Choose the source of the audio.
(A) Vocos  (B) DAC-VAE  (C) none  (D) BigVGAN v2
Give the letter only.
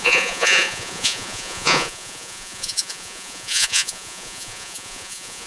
A